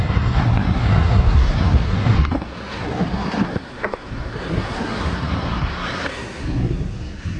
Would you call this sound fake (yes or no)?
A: yes